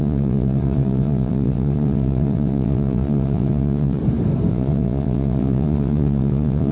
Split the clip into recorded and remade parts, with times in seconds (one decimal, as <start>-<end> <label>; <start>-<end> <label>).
0.0-4.0 remade; 4.0-4.5 recorded; 4.5-6.7 remade